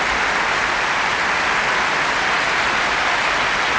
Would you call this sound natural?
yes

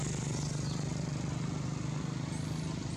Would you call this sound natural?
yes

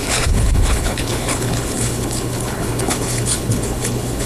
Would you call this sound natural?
no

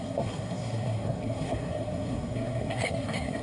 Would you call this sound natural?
no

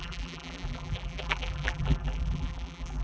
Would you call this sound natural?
no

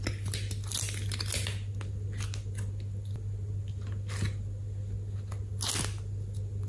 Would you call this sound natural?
yes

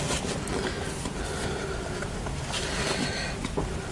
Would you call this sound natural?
yes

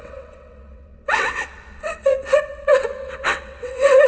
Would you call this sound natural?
no